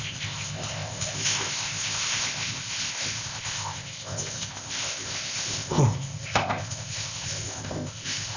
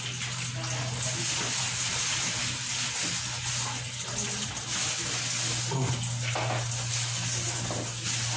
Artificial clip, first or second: first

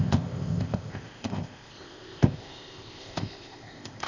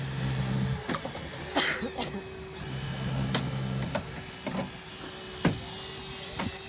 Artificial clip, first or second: first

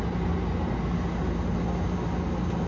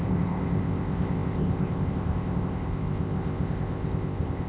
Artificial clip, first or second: second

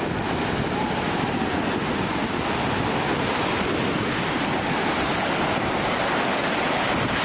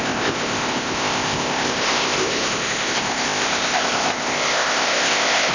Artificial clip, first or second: second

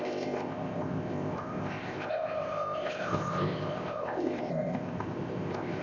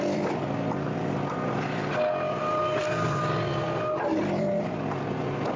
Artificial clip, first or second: first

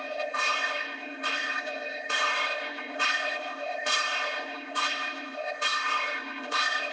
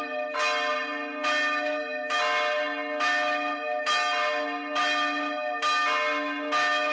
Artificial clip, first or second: first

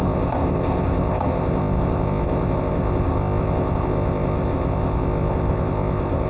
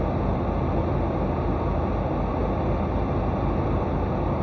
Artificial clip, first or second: first